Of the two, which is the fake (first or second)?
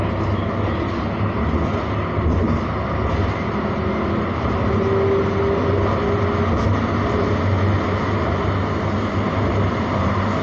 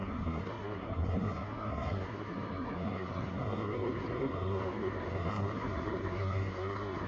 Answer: second